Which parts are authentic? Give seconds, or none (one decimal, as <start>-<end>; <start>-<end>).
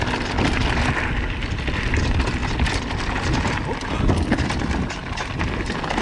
0.0-6.0